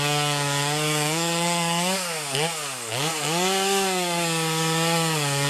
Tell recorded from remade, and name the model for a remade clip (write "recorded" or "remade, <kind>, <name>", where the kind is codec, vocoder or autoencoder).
remade, codec, DAC